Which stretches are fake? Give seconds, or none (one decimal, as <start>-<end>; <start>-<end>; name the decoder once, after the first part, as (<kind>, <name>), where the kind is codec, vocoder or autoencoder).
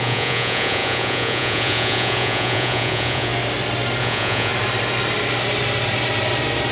0.0-3.3 (vocoder, Vocos); 4.0-4.5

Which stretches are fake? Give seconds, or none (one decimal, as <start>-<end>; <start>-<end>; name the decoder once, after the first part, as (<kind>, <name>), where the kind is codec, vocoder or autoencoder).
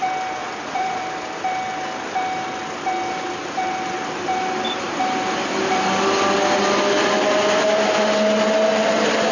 0.4-1.0 (vocoder, Vocos)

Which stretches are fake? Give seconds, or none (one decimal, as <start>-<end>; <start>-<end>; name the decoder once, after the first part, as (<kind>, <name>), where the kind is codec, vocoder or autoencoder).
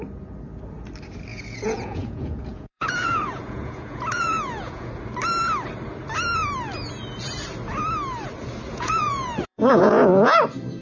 1.3-4.9 (vocoder, Vocos); 8.7-10.4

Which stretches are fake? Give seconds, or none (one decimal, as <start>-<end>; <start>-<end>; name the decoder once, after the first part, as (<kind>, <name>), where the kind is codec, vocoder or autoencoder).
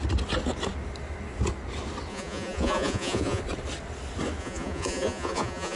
2.1-3.4 (vocoder, Vocos); 4.4-5.8